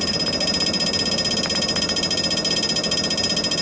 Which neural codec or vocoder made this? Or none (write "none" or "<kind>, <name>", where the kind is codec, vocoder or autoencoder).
none